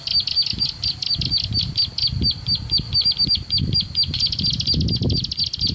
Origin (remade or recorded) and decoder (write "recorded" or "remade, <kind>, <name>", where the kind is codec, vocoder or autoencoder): recorded